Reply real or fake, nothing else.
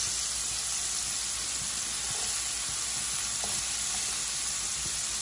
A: real